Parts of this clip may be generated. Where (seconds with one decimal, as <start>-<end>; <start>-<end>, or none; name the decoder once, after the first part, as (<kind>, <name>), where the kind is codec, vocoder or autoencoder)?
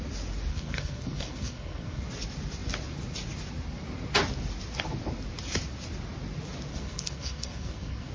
0.5-2.0 (codec, SNAC); 6.7-8.1